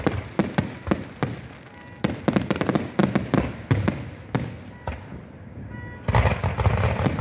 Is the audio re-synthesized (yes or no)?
no